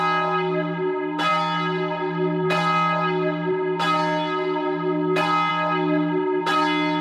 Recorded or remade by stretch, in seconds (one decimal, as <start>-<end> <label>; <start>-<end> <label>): 0.0-7.0 recorded

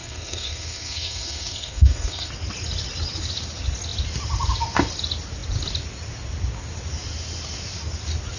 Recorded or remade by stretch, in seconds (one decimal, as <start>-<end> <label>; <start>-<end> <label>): 0.0-2.3 remade; 2.3-8.4 recorded

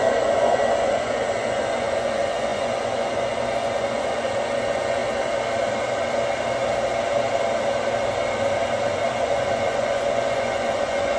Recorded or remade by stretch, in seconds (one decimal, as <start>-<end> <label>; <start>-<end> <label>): 0.0-5.0 remade; 5.0-9.2 recorded; 9.2-11.2 remade

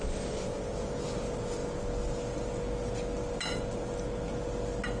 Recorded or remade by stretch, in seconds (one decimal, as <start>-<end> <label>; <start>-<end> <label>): 0.0-5.0 recorded

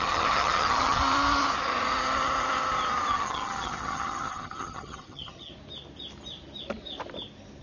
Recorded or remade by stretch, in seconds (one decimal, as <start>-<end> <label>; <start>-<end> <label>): 0.0-1.0 remade; 1.0-3.1 recorded; 3.1-5.5 remade; 5.5-7.6 recorded